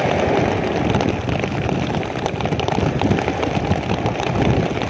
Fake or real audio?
real